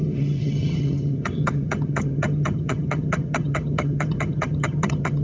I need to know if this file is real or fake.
fake